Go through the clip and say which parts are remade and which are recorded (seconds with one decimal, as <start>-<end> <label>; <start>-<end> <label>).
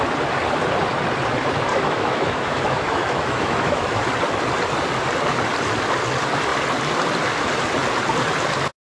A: 0.0-1.7 recorded; 1.7-4.1 remade; 4.1-8.8 recorded